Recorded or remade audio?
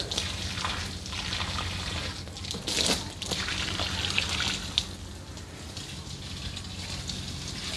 recorded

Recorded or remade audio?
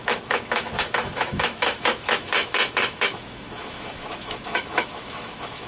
remade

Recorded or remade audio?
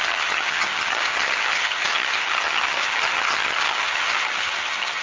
remade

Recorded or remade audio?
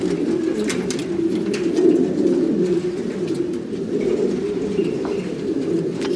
recorded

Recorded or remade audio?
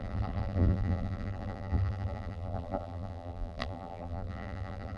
remade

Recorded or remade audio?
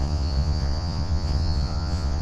remade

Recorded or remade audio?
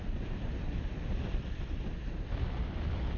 recorded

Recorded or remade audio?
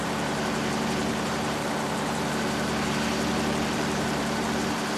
remade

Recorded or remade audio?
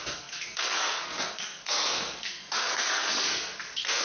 remade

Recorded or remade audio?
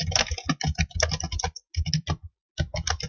recorded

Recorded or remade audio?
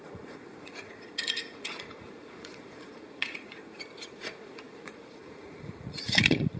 remade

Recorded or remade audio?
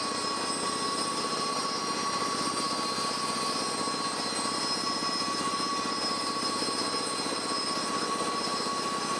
remade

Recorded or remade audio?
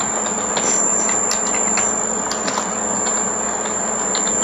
recorded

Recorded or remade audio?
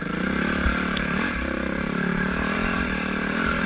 remade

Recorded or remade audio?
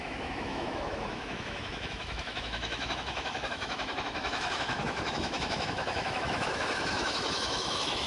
remade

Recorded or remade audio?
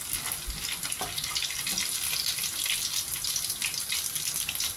recorded